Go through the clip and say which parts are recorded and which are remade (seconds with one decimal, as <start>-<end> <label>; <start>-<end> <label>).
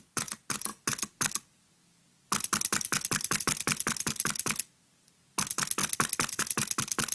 0.0-7.1 recorded